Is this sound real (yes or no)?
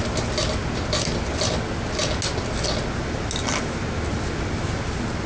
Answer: yes